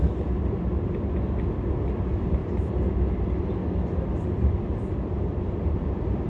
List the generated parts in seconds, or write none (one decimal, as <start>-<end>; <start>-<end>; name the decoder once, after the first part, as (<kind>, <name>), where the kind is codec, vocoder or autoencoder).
2.4-6.3 (vocoder, BigVGAN v2)